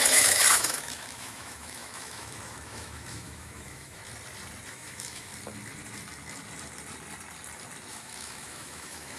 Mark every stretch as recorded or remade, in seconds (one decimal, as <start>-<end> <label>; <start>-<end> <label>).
0.0-4.0 remade; 4.0-4.7 recorded; 4.7-5.3 remade; 5.3-7.9 recorded; 7.9-9.2 remade